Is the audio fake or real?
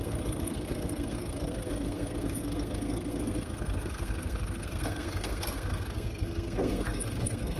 fake